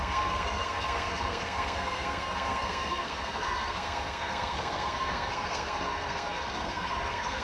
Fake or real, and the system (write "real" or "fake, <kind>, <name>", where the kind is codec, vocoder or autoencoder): fake, codec, SNAC